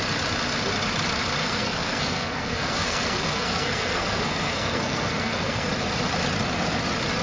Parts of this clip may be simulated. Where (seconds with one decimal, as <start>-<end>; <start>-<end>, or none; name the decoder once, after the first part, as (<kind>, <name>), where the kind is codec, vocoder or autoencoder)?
1.4-5.7 (codec, SNAC)